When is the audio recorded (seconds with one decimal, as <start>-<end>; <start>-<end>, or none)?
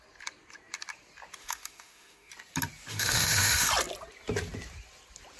0.0-1.4; 2.3-2.9; 3.7-5.4